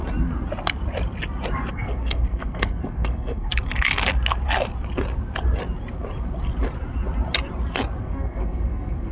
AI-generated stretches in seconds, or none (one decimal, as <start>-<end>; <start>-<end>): 1.7-3.5; 8.0-9.1

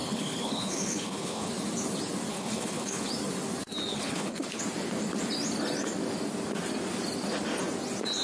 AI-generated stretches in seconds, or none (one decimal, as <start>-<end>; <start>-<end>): 0.0-1.5; 2.3-3.1; 3.9-4.6